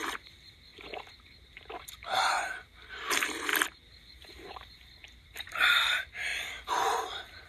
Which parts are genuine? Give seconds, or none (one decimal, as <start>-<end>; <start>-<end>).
3.5-4.0

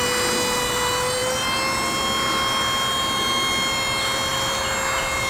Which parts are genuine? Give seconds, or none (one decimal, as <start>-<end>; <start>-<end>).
0.0-5.3

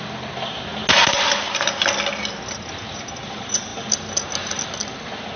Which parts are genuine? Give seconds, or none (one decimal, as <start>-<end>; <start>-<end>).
0.0-5.4